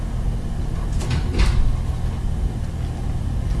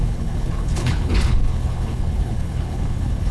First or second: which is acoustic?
first